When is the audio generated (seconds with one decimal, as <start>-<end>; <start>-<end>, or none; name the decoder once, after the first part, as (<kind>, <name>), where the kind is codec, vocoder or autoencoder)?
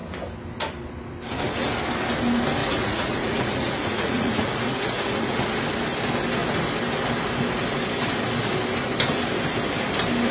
2.6-5.5 (vocoder, Vocos)